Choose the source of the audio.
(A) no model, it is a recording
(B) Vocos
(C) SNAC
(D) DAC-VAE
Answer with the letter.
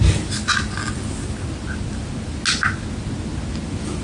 A